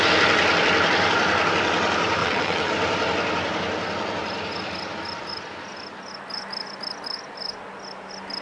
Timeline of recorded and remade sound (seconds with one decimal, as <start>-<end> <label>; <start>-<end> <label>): 0.0-2.2 recorded; 2.2-2.7 remade; 2.7-8.4 recorded